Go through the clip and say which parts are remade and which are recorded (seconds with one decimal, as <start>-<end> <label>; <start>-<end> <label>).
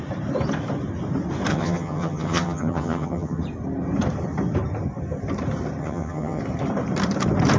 0.0-1.5 recorded; 1.5-3.4 remade; 3.4-5.8 recorded; 5.8-6.4 remade; 6.4-7.6 recorded